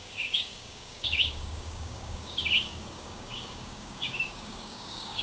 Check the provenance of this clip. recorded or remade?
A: remade